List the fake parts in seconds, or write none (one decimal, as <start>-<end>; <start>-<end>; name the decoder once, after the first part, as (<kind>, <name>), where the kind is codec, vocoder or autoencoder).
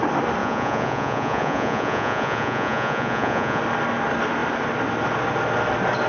0.4-3.6 (vocoder, Vocos)